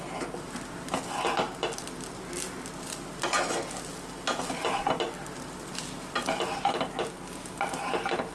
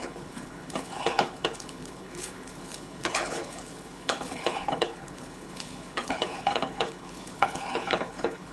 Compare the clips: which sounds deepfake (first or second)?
second